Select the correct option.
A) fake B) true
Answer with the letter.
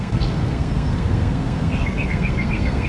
A